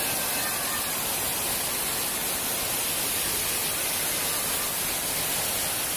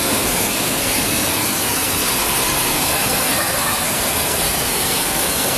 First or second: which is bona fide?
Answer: first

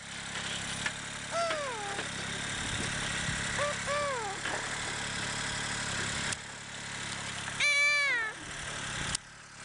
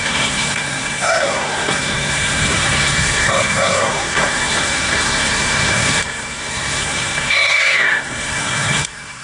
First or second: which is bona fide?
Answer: first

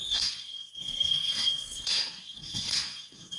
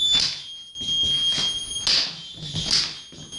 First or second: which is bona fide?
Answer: second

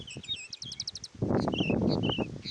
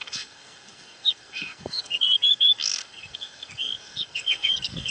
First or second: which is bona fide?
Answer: first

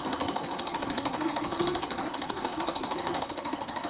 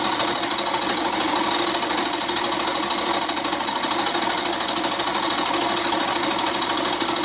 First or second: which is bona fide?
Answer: second